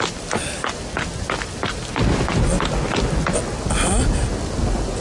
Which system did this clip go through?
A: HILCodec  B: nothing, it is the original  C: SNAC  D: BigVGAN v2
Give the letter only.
B